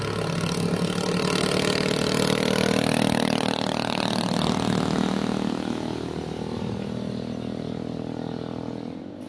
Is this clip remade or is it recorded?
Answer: recorded